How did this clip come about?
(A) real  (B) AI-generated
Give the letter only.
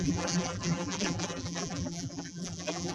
B